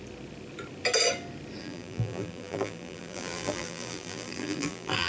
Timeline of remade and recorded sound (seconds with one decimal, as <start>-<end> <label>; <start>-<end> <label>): 0.0-1.6 recorded; 1.6-5.1 remade